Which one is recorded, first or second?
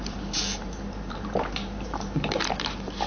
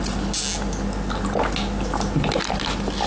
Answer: second